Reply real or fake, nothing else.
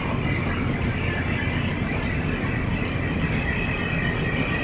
real